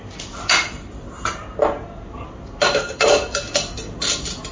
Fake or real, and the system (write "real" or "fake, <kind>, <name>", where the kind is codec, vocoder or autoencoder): real